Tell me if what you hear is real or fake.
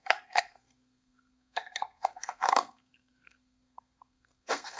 fake